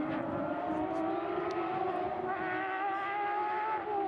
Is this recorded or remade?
recorded